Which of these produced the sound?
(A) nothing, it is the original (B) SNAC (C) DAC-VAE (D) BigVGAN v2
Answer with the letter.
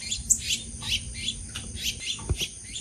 A